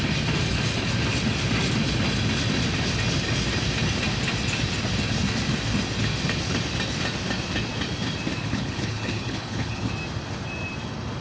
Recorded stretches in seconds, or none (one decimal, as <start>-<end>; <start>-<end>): 0.0-8.4; 9.9-11.2

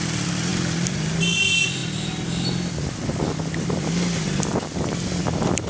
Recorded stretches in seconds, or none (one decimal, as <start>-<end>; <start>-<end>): 0.0-5.7

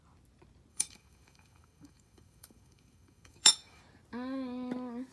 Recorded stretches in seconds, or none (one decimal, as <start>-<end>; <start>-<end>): 0.0-0.7; 3.8-5.1

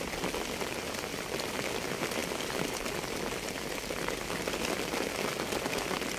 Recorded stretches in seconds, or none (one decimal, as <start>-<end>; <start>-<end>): 0.0-6.2

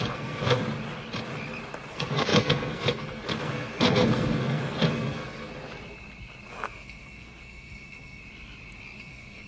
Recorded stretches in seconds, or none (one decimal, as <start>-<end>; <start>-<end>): 0.6-1.9; 5.5-6.5; 8.2-9.0

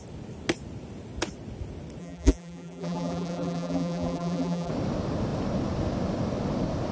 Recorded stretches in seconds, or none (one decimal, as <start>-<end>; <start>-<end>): 0.0-2.0; 4.7-6.9

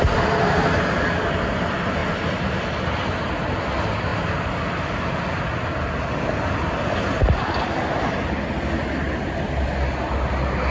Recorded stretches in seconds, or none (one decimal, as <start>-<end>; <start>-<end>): 0.0-10.7

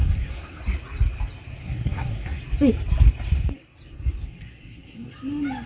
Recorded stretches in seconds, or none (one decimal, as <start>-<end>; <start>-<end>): 0.6-1.6; 2.4-4.2; 5.1-5.7